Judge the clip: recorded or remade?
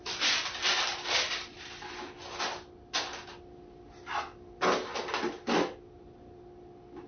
recorded